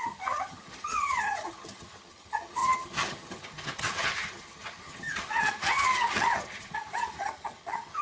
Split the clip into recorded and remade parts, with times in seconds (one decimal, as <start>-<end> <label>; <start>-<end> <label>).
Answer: 0.0-8.0 remade